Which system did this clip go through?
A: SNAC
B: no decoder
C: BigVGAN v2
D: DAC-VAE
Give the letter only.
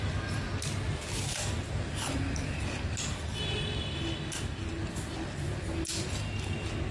B